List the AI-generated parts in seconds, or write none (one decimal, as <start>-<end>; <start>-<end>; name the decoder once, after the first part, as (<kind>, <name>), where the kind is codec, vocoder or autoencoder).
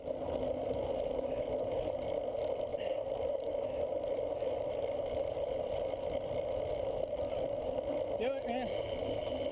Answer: 2.7-7.8 (vocoder, BigVGAN v2)